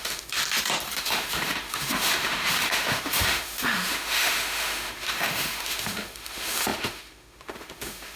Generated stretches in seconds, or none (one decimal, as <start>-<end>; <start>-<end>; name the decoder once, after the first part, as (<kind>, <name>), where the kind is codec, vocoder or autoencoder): 0.0-0.4 (autoencoder, DAC-VAE); 1.0-8.2